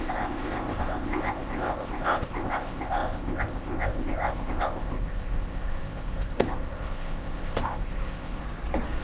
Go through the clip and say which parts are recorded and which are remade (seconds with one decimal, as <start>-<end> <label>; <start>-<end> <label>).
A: 0.0-8.4 remade; 8.4-9.0 recorded